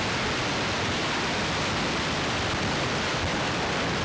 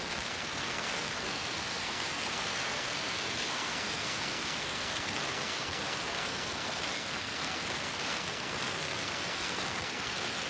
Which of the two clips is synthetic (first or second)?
second